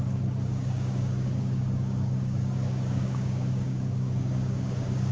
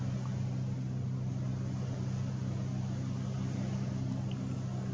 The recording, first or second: second